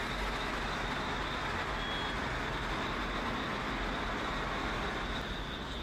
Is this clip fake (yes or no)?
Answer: no